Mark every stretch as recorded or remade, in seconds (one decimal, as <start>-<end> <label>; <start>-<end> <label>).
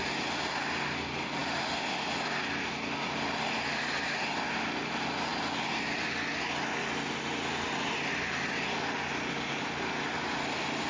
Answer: 0.0-10.9 recorded